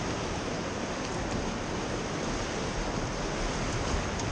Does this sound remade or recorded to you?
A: recorded